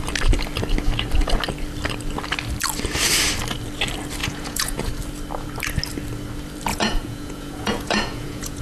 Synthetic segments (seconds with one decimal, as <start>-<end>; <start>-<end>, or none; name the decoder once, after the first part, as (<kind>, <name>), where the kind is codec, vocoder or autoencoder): 4.2-4.9 (vocoder, Vocos); 6.7-8.6